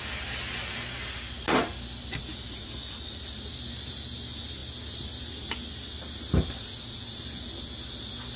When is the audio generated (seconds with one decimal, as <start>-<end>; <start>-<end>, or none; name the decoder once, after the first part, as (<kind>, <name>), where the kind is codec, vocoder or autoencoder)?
none